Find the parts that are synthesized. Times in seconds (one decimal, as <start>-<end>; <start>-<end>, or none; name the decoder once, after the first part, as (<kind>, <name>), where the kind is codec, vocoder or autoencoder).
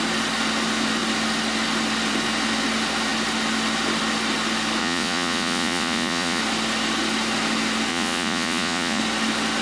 4.8-6.4 (vocoder, Vocos); 7.9-9.0